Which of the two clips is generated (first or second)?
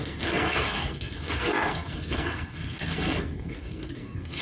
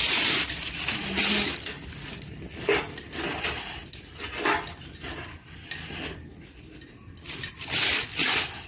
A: first